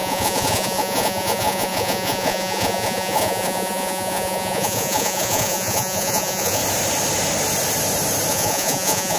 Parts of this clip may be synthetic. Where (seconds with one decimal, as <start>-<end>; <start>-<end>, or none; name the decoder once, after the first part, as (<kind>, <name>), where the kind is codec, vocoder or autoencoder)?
0.0-6.6 (vocoder, Vocos); 8.3-9.2